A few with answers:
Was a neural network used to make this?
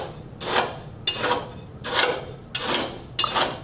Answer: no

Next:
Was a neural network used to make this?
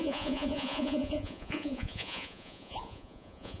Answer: yes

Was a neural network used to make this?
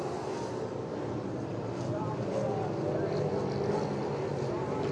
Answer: no